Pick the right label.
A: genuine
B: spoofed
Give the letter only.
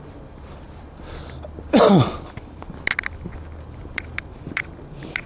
A